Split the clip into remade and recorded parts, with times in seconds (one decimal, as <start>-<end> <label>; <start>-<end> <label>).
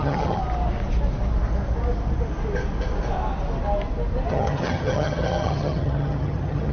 0.0-0.4 remade; 0.4-4.3 recorded; 4.3-6.7 remade